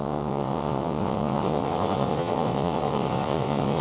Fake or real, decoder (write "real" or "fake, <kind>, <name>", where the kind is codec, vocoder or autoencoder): fake, vocoder, WaveNeXt